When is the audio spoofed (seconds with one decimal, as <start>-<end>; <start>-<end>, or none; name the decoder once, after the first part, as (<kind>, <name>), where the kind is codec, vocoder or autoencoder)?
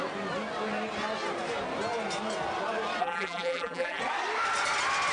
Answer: 3.0-4.0 (vocoder, BigVGAN v2)